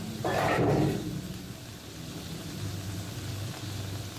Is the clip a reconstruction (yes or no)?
no